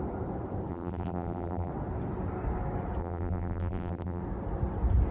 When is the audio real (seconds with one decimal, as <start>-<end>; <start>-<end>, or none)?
0.0-0.7; 1.7-3.0; 4.2-5.1